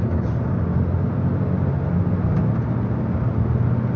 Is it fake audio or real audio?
real